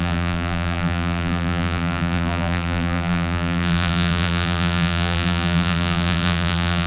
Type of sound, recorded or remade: remade